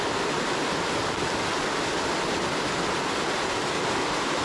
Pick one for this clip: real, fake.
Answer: real